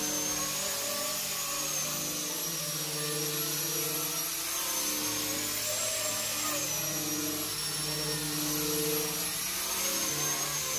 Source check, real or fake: real